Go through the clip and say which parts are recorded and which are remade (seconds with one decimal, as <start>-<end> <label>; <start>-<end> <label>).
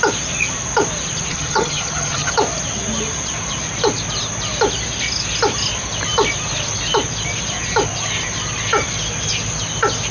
0.0-1.3 recorded; 1.3-2.3 remade; 2.3-10.1 recorded